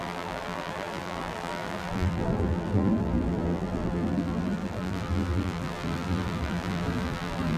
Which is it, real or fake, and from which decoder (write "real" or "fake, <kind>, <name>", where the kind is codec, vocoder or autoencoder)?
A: fake, vocoder, BigVGAN v2